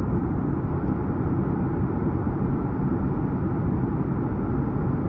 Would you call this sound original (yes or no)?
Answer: yes